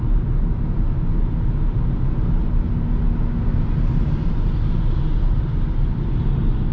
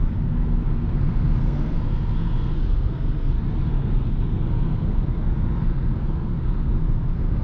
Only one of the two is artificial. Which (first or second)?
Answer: second